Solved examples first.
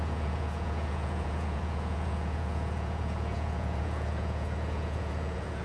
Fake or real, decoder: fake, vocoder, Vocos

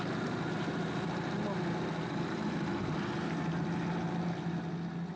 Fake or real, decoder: real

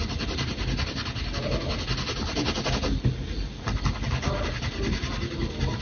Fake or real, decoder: real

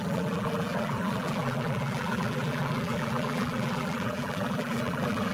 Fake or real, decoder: fake, vocoder, BigVGAN v2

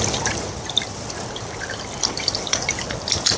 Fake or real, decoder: fake, vocoder, BigVGAN v2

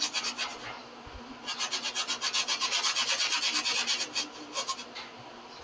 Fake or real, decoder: real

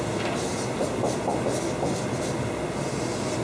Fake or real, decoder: real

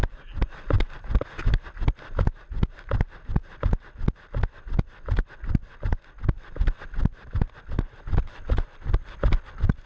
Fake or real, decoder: real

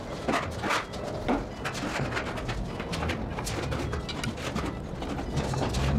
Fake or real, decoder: real